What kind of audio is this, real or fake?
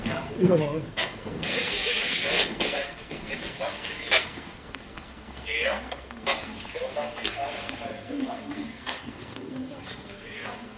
fake